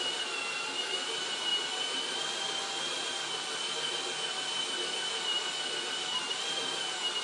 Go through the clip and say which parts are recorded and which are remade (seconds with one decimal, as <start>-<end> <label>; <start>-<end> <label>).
0.0-7.2 recorded